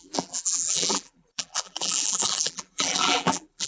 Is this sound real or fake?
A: fake